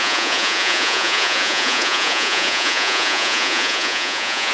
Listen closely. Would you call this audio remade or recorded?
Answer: remade